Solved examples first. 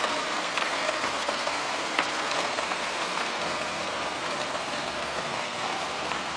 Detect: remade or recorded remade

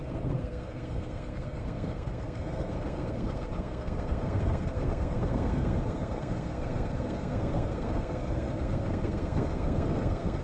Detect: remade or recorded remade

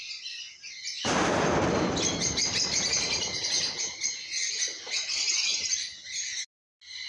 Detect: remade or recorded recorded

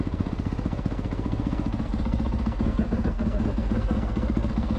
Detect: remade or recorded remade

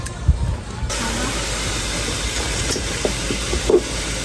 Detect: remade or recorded recorded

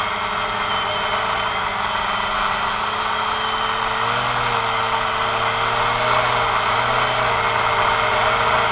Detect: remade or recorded recorded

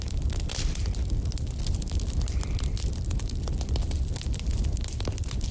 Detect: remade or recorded recorded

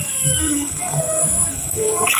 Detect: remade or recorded remade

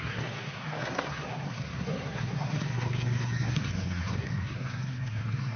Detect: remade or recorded remade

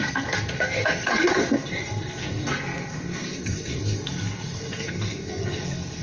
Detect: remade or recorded remade